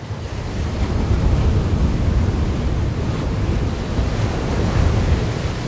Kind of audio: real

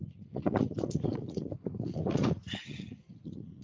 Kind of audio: fake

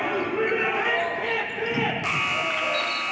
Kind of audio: real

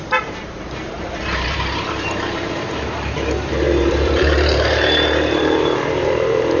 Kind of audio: fake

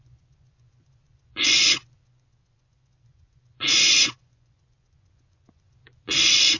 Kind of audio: fake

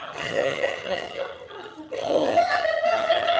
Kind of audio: fake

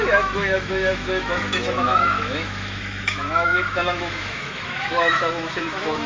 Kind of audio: fake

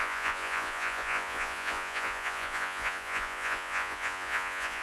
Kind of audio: fake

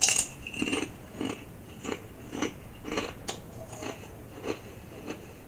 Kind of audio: fake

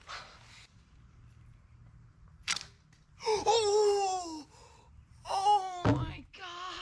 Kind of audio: real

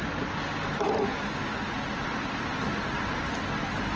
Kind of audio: real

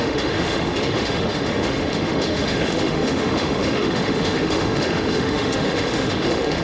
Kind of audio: fake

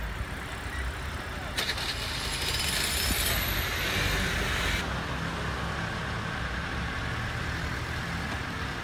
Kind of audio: real